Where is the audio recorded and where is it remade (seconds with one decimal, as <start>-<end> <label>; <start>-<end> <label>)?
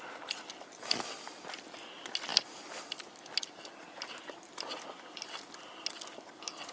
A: 0.0-6.7 recorded